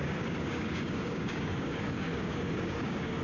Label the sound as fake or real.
fake